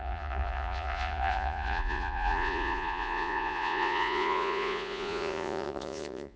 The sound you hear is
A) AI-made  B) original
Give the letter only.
A